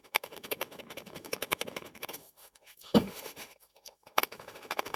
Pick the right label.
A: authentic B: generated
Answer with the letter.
B